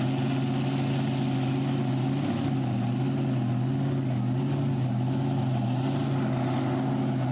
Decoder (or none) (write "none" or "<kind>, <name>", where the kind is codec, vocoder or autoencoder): none